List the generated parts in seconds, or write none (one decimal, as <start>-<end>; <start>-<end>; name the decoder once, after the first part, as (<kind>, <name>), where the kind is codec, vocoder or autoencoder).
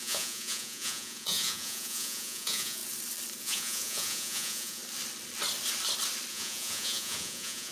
0.0-2.8 (vocoder, Vocos); 3.4-4.8; 6.3-7.7